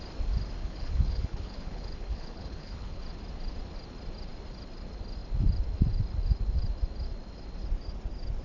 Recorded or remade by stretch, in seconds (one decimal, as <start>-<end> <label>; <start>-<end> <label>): 0.0-0.6 recorded; 0.6-3.0 remade; 3.0-8.4 recorded